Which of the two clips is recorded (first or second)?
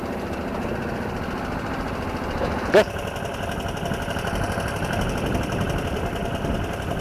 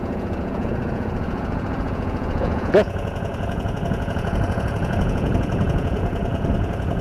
first